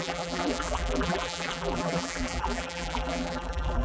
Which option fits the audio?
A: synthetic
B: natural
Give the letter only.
A